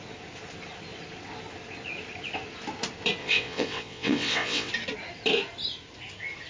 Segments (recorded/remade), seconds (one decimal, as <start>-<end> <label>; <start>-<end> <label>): 0.0-3.2 recorded; 3.2-4.7 remade; 4.7-6.5 recorded

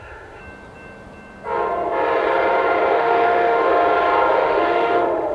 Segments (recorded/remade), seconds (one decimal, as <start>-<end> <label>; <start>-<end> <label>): 0.0-0.4 remade; 0.4-2.9 recorded; 2.9-3.7 remade; 3.7-4.3 recorded; 4.3-5.3 remade

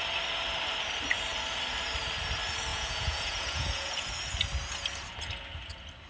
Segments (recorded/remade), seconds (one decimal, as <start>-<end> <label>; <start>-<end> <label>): 0.0-2.7 recorded; 2.7-4.1 remade; 4.1-6.1 recorded

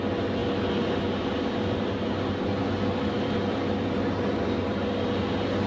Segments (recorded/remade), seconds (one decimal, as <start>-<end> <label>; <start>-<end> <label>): 0.0-5.7 recorded

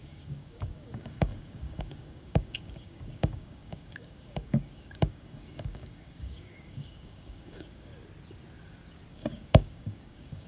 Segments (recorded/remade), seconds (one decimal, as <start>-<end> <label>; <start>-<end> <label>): 0.0-7.9 remade; 7.9-9.1 recorded; 9.1-10.5 remade

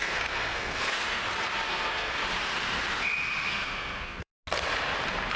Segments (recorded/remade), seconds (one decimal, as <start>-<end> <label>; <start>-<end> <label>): 0.0-1.2 remade; 1.2-1.7 recorded; 1.7-2.2 remade; 2.2-3.5 recorded; 3.5-4.3 remade; 4.3-5.4 recorded